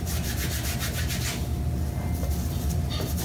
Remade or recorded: recorded